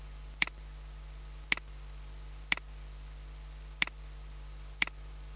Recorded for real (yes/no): yes